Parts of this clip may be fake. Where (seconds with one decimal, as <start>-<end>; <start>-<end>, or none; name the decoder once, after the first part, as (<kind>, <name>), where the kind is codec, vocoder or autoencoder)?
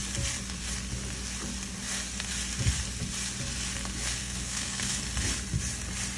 4.2-5.0 (codec, SNAC)